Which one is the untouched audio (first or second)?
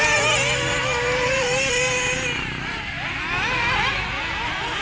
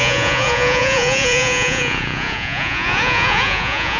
first